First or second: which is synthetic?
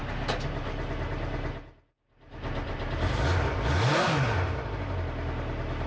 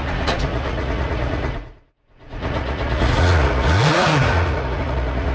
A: second